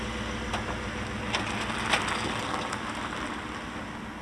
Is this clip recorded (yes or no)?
yes